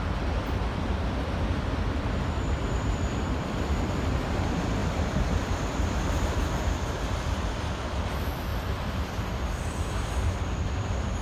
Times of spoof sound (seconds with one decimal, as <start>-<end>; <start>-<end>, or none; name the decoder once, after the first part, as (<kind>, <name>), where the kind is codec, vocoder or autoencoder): 0.0-11.2 (vocoder, BigVGAN v2)